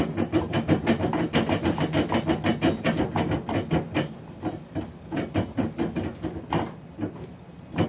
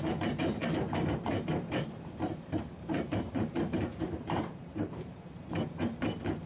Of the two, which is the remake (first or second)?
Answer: second